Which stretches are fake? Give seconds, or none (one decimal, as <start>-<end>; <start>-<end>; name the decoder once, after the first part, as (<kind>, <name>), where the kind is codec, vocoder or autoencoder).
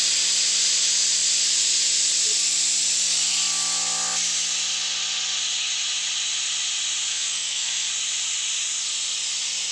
7.1-7.9 (codec, SNAC)